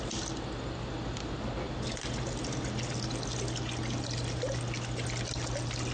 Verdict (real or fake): real